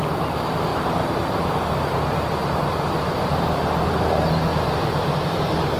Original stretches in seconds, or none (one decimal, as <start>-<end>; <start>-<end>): none